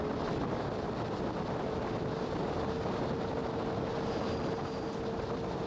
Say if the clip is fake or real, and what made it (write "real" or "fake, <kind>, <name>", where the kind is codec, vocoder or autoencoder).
real